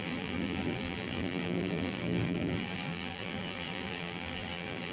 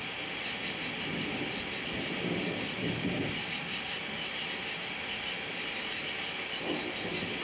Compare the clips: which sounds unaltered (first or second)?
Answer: second